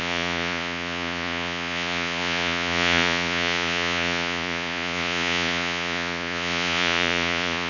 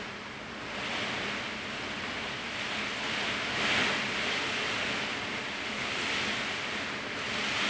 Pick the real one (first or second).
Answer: second